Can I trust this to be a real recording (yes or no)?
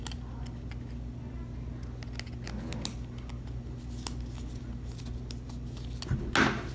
yes